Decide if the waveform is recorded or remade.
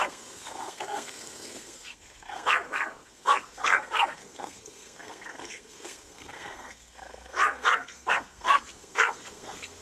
remade